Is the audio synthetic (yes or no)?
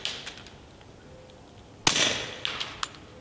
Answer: no